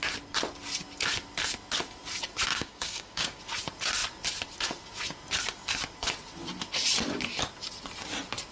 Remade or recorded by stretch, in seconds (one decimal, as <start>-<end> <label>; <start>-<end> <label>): 0.0-2.5 recorded; 2.5-3.4 remade; 3.4-8.5 recorded